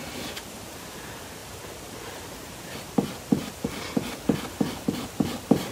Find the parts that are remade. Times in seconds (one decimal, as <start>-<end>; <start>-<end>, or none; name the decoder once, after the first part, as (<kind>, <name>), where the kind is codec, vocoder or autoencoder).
none